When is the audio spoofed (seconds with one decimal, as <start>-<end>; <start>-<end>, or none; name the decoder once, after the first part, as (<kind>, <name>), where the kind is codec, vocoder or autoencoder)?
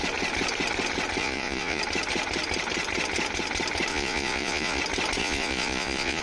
1.2-1.8 (vocoder, Vocos); 3.9-4.8; 5.2-6.2